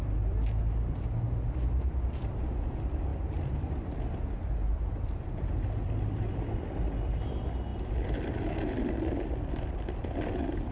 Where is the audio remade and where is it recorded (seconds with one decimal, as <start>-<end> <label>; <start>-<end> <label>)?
0.0-4.6 recorded; 4.6-5.5 remade; 5.5-10.7 recorded